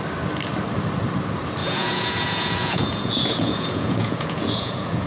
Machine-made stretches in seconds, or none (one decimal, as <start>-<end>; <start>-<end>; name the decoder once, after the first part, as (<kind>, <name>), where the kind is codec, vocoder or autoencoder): 1.6-5.1 (vocoder, Vocos)